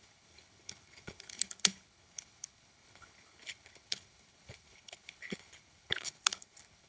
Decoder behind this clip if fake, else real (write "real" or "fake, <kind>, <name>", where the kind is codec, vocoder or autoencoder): fake, codec, HILCodec